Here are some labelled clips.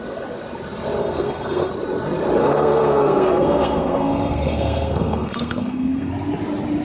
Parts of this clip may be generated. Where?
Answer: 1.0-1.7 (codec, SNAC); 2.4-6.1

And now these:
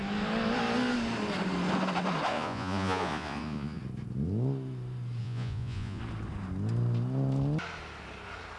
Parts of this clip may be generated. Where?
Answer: 2.3-3.8 (vocoder, Vocos); 5.2-6.0